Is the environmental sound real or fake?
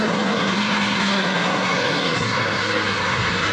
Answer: fake